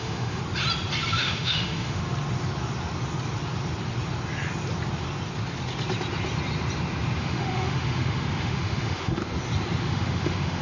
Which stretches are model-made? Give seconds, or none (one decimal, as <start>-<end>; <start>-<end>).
0.0-0.4; 1.1-2.0; 7.2-9.2; 9.8-10.6